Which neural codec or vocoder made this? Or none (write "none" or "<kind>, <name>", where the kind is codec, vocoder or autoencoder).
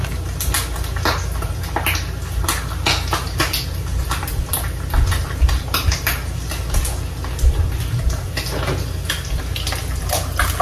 none